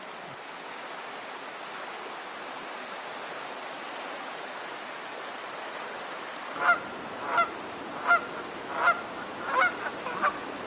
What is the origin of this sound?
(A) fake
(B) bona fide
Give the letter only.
B